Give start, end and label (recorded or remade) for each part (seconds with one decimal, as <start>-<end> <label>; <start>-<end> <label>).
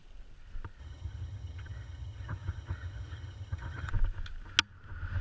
0.0-0.8 recorded; 0.8-3.9 remade; 3.9-5.2 recorded